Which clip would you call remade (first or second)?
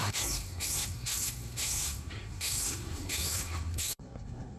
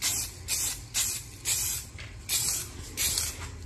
first